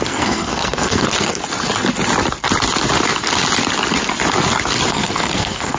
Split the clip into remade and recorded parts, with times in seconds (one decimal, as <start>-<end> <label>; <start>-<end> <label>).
0.0-1.4 remade; 1.4-4.9 recorded; 4.9-5.8 remade